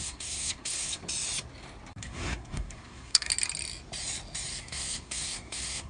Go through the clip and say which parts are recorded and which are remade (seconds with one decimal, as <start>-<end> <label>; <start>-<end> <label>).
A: 0.0-1.0 remade; 1.0-1.9 recorded; 1.9-3.3 remade; 3.3-4.6 recorded; 4.6-5.9 remade